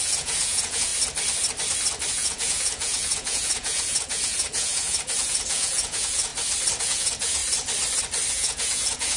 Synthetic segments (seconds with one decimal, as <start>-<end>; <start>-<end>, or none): 0.0-0.9; 2.1-6.3; 6.8-7.4; 8.3-9.2